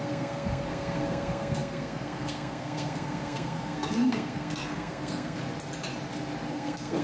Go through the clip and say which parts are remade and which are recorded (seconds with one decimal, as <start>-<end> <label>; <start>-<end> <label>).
0.0-5.4 remade; 5.4-6.5 recorded; 6.5-7.0 remade